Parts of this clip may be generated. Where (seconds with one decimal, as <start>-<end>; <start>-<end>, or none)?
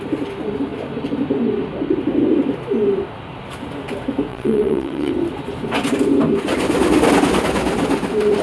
4.3-5.1